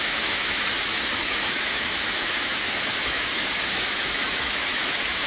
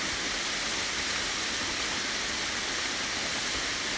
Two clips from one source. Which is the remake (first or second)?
first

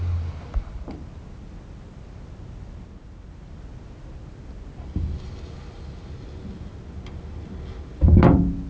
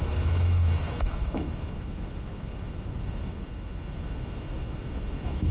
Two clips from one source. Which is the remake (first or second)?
second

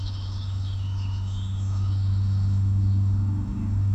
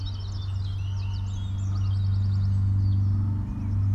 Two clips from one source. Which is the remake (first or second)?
first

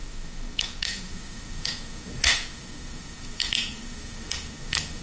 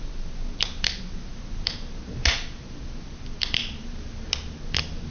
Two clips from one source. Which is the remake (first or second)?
first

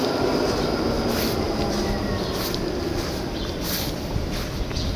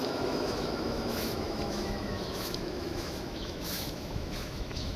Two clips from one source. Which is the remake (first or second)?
second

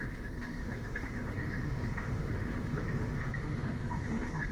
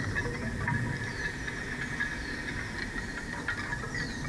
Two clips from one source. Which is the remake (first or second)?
first